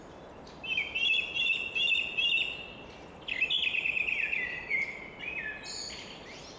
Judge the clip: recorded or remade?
recorded